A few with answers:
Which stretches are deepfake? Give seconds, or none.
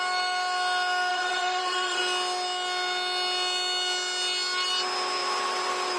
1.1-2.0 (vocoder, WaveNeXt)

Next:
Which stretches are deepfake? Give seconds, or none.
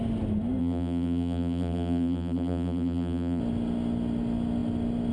0.6-3.4 (vocoder, BigVGAN v2)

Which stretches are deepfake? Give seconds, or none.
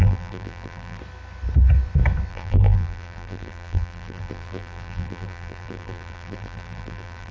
0.0-1.0 (vocoder, BigVGAN v2); 2.3-7.3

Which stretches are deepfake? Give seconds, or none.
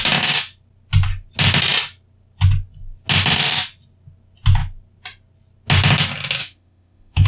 6.4-7.3 (autoencoder, DAC-VAE)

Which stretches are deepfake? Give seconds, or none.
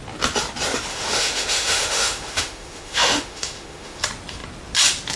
0.9-4.0 (autoencoder, DAC-VAE)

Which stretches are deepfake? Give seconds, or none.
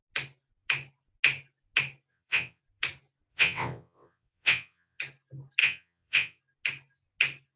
2.1-2.6 (vocoder, WaveNeXt); 3.3-5.0; 5.6-6.4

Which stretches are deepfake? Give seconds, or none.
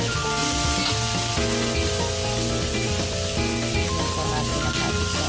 none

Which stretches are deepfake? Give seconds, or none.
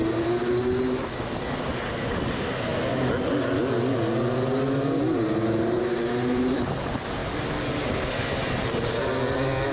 none